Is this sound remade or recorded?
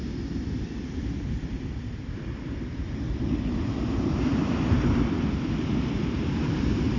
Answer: recorded